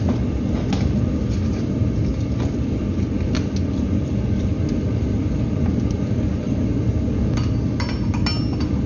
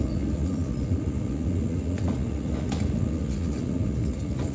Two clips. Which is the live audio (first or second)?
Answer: first